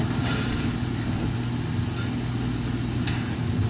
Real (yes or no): yes